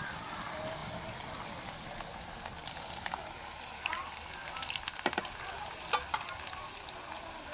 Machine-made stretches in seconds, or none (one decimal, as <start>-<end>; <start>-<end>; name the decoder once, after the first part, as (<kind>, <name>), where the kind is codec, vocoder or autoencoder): none